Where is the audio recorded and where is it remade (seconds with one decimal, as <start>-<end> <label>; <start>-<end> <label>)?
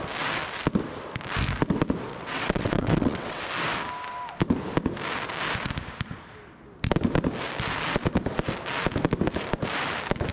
0.0-2.1 recorded; 2.1-3.4 remade; 3.4-10.3 recorded